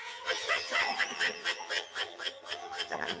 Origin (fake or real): fake